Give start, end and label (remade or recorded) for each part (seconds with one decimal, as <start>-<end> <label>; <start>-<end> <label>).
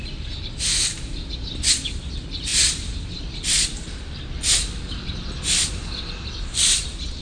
0.0-7.2 recorded